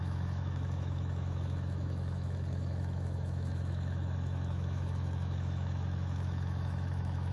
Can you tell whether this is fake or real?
fake